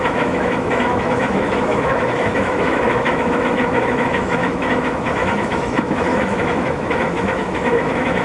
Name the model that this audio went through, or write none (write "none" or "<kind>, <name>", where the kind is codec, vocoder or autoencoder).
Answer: autoencoder, DAC-VAE